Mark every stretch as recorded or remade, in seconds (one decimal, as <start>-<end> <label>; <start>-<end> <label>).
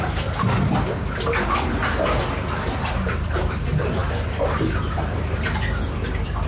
0.0-6.5 recorded